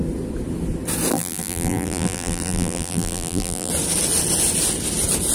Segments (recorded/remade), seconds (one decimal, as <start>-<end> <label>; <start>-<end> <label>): 0.0-1.1 recorded; 1.1-3.7 remade; 3.7-5.3 recorded